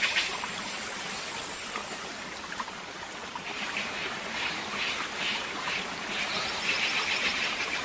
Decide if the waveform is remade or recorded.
remade